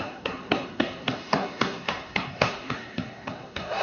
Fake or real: fake